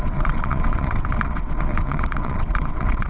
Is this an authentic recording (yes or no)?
no